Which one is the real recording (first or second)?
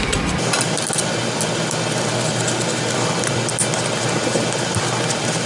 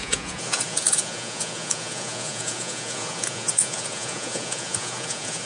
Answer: first